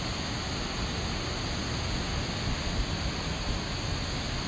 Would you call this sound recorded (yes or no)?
yes